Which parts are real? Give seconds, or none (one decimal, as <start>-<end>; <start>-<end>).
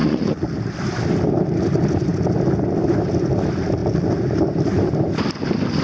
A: 0.5-5.8